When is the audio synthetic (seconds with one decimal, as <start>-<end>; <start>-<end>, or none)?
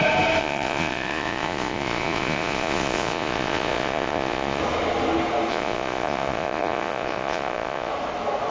0.4-4.6; 5.5-7.9